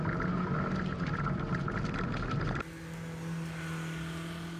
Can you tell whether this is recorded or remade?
recorded